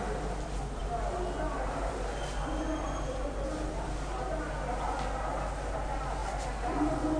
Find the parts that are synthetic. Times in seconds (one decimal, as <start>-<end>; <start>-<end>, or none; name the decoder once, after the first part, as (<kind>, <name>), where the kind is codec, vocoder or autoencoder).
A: none